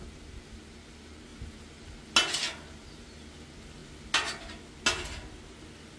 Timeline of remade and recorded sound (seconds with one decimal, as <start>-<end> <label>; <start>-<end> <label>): 0.0-6.0 recorded